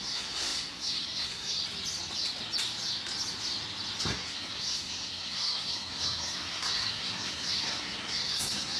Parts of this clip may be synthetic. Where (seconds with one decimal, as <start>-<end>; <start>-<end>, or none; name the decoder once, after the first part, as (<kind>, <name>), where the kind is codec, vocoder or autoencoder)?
0.0-1.6 (codec, SNAC); 4.0-8.8